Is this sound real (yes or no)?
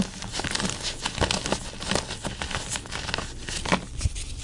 yes